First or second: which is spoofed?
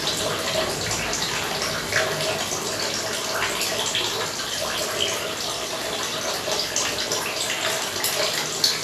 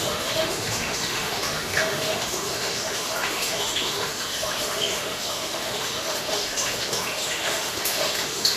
second